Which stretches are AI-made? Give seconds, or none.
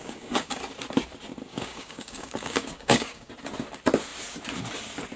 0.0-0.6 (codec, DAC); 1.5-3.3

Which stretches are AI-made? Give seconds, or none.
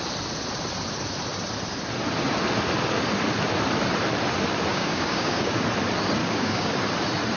4.7-5.6 (codec, DAC); 6.2-6.7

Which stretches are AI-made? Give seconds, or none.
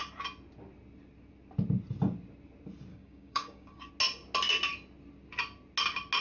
2.9-3.9 (codec, DAC)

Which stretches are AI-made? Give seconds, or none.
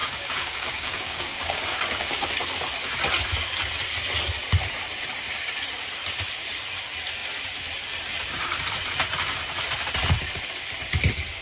0.0-2.3 (codec, DAC)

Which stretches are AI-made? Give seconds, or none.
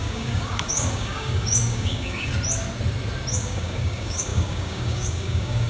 0.0-2.3 (codec, DAC); 3.3-5.7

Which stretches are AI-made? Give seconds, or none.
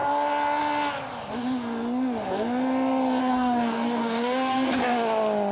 3.2-4.8 (codec, DAC)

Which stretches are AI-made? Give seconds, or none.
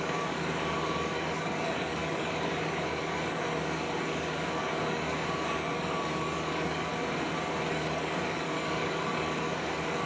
0.0-6.9 (codec, DAC); 7.7-10.1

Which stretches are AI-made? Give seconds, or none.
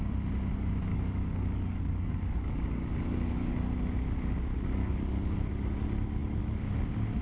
0.9-3.5 (codec, DAC); 4.8-5.4